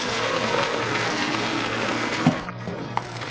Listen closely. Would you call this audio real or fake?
fake